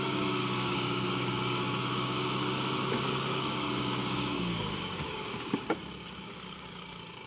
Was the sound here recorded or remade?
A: remade